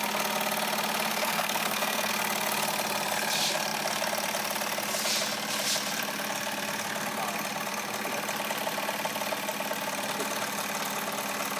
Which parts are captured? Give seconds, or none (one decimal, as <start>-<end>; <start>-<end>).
0.0-1.1; 2.1-11.6